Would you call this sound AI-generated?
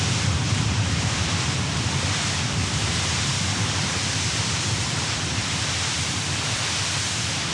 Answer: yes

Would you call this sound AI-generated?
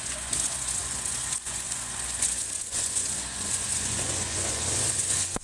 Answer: yes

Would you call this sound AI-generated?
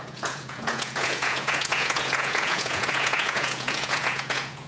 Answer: yes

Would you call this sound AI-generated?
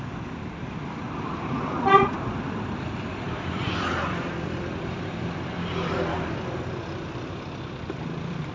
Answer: yes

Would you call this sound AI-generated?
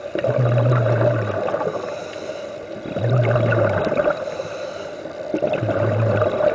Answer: no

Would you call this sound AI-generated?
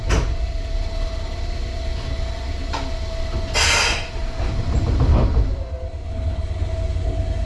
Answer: no